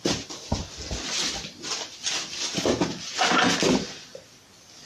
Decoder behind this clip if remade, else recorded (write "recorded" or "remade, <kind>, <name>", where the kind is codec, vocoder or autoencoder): recorded